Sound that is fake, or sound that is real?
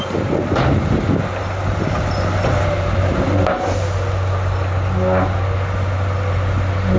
real